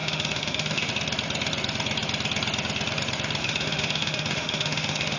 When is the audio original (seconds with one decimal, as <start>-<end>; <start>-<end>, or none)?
0.9-3.4